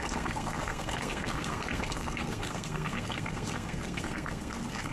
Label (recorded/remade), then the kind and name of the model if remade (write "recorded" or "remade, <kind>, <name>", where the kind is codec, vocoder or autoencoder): remade, codec, SNAC